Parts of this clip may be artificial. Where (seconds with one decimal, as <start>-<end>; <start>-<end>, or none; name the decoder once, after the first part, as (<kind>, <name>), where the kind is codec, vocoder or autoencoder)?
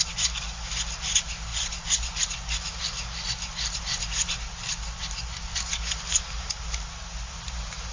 none